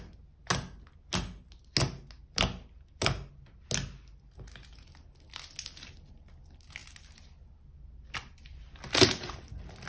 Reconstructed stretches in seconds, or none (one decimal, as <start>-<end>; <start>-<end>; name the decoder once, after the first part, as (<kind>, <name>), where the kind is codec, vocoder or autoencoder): none